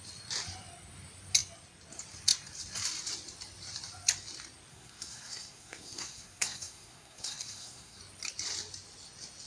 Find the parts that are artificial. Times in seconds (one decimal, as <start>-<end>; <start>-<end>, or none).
4.7-8.0